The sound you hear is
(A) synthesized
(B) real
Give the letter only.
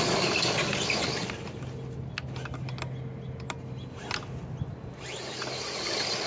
B